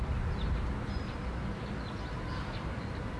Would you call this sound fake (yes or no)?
no